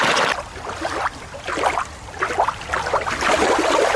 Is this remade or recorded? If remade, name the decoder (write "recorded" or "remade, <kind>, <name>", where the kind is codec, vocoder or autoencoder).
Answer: recorded